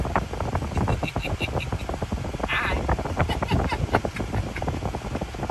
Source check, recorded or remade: recorded